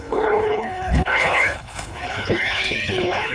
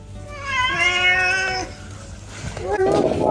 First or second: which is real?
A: second